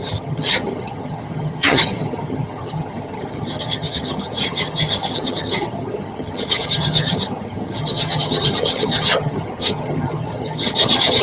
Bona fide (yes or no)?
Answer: no